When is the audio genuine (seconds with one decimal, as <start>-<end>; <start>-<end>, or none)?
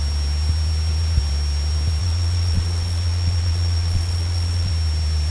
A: 0.0-2.0; 4.7-5.3